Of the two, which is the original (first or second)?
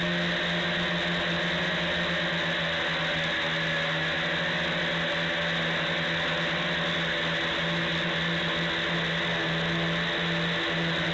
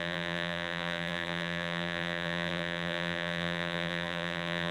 first